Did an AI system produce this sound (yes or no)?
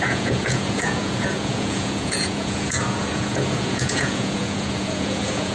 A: yes